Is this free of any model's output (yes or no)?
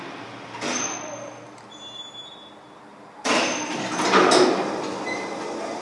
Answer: yes